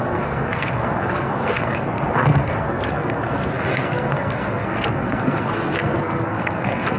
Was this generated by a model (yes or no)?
yes